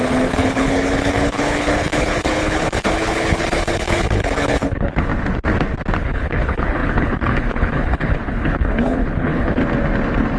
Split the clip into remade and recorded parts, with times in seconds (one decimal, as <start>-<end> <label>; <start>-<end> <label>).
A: 0.0-5.1 remade; 5.1-6.0 recorded; 6.0-9.6 remade; 9.6-10.4 recorded